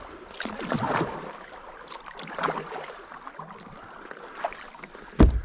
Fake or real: real